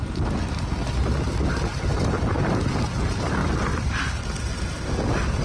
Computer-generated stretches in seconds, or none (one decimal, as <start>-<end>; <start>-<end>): 1.9-2.6; 3.4-4.0